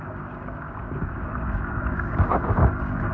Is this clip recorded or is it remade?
remade